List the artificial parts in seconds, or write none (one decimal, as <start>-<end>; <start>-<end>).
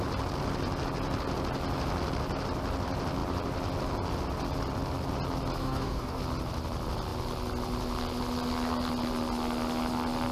5.6-6.2